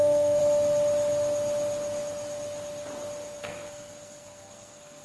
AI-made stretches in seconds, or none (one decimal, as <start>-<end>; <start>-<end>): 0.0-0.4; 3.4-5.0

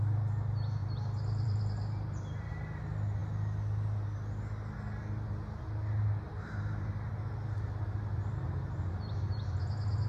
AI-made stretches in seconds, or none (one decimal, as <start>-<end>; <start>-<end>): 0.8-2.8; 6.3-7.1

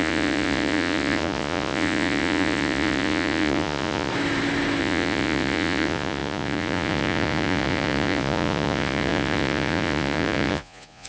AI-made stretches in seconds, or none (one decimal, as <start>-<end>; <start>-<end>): 0.0-4.1; 4.8-11.1